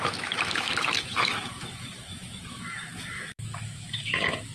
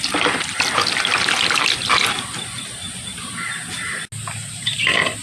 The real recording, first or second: second